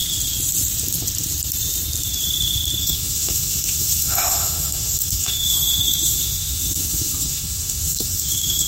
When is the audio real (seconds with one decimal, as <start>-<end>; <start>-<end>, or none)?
0.0-2.8